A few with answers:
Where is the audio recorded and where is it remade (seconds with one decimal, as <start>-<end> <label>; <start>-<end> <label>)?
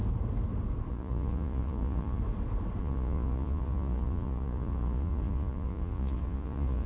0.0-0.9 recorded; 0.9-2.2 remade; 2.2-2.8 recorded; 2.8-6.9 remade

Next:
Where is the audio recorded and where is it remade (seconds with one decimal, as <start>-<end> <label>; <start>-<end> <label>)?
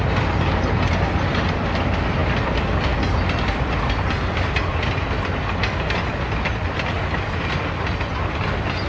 0.0-8.9 recorded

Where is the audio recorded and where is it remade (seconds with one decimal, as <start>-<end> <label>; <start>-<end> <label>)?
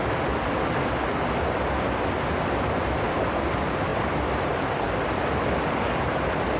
0.0-6.6 recorded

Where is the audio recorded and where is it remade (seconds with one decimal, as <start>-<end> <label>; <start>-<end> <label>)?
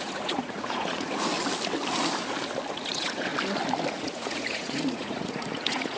0.0-1.3 remade; 1.3-2.7 recorded; 2.7-3.3 remade; 3.3-3.9 recorded; 3.9-6.0 remade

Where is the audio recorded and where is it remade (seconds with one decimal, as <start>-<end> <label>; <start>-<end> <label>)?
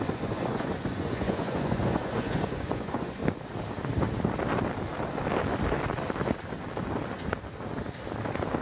0.0-3.2 remade; 3.2-8.6 recorded